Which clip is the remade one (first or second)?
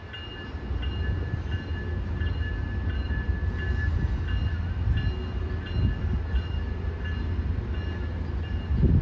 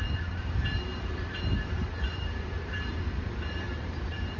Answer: second